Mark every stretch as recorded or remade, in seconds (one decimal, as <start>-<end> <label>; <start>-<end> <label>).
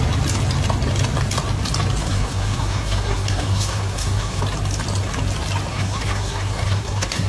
0.0-2.0 recorded; 2.0-4.4 remade; 4.4-5.7 recorded; 5.7-7.3 remade